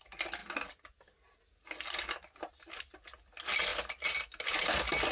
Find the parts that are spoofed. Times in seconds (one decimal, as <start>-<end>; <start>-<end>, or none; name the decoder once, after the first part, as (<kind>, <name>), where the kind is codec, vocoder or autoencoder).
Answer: none